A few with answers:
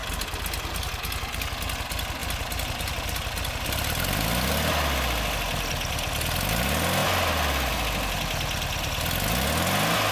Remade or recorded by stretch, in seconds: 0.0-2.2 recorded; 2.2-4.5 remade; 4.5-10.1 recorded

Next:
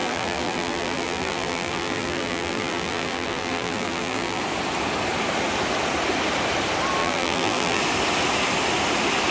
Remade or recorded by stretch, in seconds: 0.0-4.4 remade; 4.4-7.0 recorded; 7.0-7.8 remade; 7.8-9.3 recorded

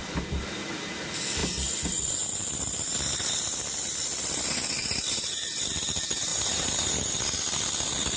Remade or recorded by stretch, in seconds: 0.0-6.3 recorded; 6.3-7.1 remade; 7.1-8.2 recorded